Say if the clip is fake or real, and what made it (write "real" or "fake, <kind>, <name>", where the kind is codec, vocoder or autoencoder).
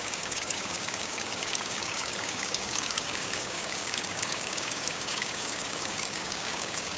fake, codec, DAC